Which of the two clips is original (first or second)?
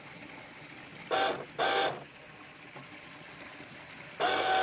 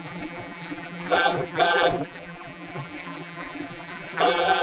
first